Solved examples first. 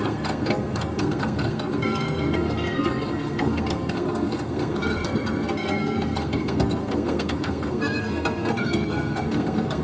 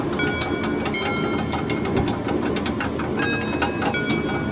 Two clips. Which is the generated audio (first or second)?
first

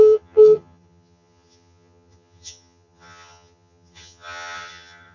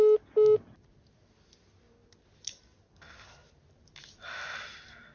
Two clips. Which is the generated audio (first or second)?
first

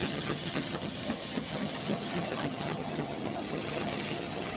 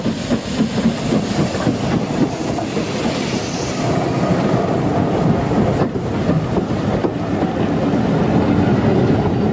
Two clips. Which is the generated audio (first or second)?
first